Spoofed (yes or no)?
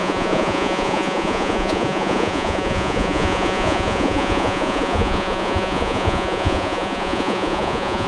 yes